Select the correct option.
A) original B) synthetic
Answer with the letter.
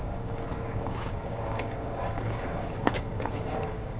B